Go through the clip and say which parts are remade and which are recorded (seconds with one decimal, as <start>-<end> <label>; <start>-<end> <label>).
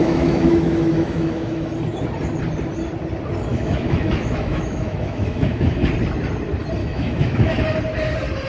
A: 0.0-1.7 remade; 1.7-3.5 recorded; 3.5-5.9 remade; 5.9-6.8 recorded; 6.8-7.6 remade; 7.6-8.5 recorded